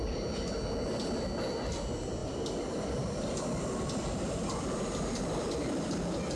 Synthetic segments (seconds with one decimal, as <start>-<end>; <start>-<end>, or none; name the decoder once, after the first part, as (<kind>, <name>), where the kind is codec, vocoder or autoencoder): 2.2-6.0 (vocoder, BigVGAN v2)